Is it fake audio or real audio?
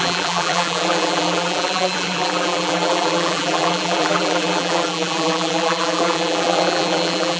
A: fake